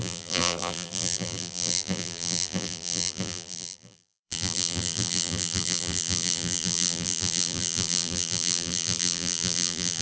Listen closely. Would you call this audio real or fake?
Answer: fake